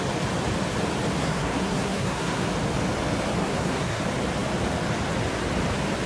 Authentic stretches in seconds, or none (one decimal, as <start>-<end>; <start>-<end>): 0.0-1.2; 2.5-3.4; 4.0-6.1